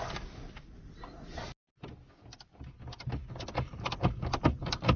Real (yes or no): yes